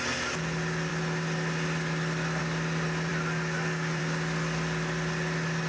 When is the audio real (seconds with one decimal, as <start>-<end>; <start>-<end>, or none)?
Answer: 0.0-5.7